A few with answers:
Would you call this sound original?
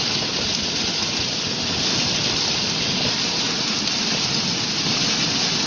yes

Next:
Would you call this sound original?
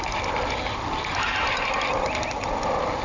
yes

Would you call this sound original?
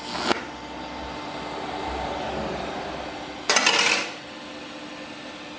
yes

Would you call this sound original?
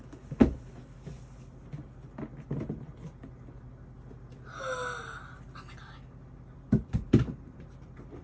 yes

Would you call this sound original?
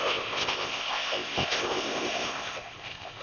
no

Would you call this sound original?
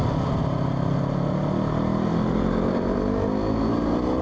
yes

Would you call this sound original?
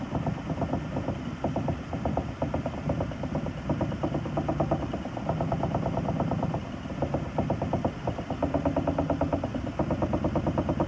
yes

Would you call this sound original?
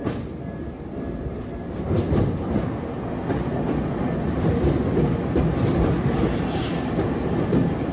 yes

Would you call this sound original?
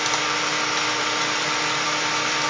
yes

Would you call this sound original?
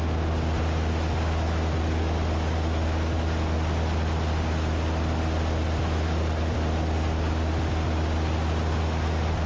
yes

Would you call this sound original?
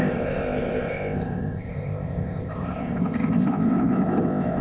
no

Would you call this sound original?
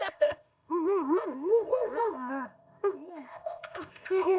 no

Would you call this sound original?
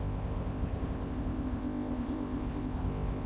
no